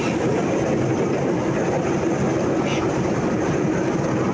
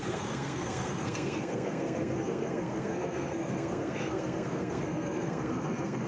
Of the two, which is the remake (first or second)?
second